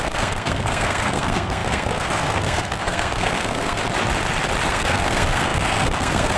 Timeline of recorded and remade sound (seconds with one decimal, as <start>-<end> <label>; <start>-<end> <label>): 0.0-3.8 remade; 3.8-4.7 recorded; 4.7-6.4 remade